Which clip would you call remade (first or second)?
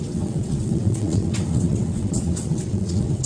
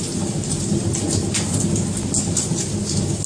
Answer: first